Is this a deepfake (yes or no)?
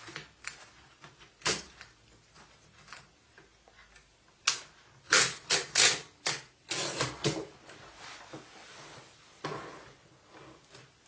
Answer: no